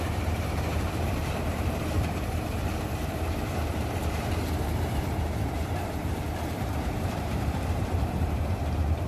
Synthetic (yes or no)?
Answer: yes